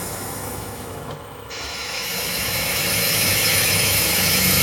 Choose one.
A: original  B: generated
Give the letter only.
B